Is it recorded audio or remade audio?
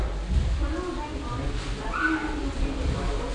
recorded